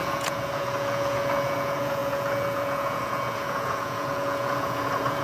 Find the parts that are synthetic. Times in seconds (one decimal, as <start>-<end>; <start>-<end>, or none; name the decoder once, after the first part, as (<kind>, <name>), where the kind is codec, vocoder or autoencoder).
0.0-5.2 (vocoder, Vocos)